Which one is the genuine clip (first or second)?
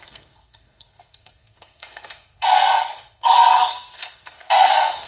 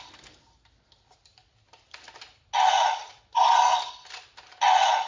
second